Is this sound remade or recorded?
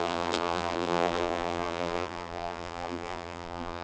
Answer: remade